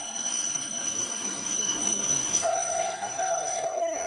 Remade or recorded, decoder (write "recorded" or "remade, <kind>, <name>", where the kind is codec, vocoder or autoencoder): remade, codec, SNAC